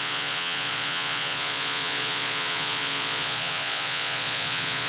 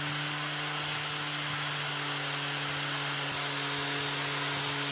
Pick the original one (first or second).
second